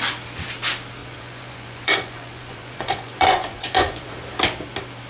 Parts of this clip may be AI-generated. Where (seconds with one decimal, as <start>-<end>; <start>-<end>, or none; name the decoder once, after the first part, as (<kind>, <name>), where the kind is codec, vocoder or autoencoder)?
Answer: 1.0-4.1 (vocoder, Vocos)